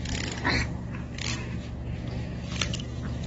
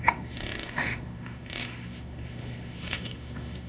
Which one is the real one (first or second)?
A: first